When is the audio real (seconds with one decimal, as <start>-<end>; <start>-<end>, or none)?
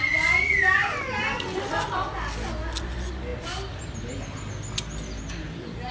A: 0.0-5.9